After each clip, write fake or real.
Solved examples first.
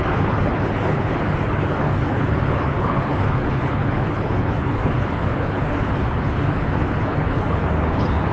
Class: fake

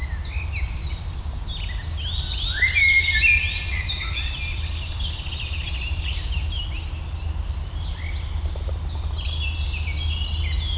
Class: real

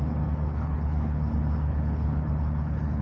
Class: fake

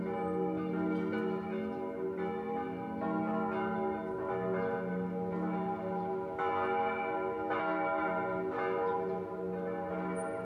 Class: real